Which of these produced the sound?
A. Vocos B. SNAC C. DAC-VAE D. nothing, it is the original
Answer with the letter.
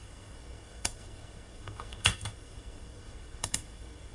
B